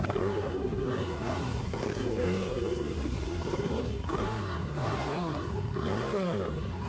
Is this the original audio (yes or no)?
no